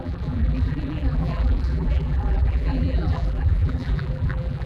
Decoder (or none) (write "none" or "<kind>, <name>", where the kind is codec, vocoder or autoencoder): vocoder, BigVGAN v2